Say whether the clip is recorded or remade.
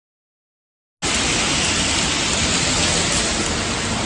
recorded